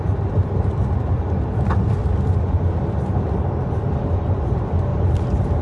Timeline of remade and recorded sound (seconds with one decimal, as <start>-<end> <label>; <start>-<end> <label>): 0.0-2.0 remade; 2.0-4.1 recorded; 4.1-5.6 remade